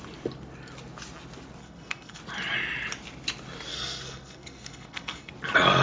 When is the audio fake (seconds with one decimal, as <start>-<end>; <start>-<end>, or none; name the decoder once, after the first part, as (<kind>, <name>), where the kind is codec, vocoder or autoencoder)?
1.6-2.2 (codec, SNAC); 3.7-5.3